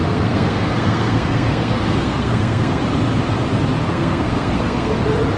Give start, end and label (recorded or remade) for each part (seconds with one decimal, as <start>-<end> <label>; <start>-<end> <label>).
0.0-2.8 remade; 2.8-3.9 recorded; 3.9-5.0 remade; 5.0-5.4 recorded